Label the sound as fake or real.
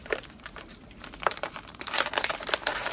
fake